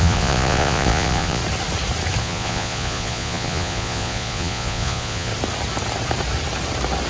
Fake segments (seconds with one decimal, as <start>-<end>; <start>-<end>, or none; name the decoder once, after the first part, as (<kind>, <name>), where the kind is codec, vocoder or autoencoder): 0.0-1.4 (vocoder, Vocos); 2.2-5.3